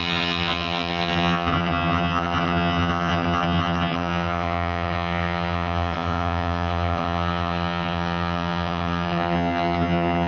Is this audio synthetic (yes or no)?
yes